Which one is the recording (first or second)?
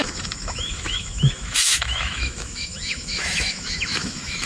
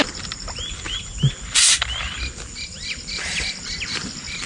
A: second